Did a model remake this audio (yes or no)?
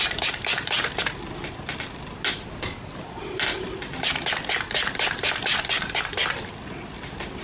no